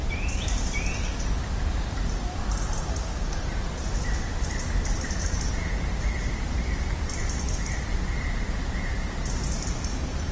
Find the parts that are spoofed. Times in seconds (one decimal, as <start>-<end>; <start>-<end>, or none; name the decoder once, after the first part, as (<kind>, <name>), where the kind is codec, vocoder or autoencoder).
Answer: 0.0-0.7 (vocoder, BigVGAN v2); 6.6-7.2